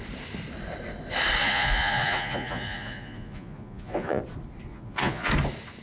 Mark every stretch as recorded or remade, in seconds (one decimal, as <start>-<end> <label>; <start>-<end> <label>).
0.0-1.4 recorded; 1.4-4.2 remade; 4.2-4.7 recorded; 4.7-5.3 remade; 5.3-5.8 recorded